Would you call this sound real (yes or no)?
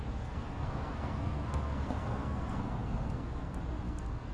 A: no